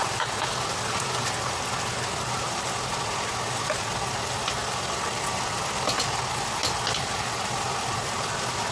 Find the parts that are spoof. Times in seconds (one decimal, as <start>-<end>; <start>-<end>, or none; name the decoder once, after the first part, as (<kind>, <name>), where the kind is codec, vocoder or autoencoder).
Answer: none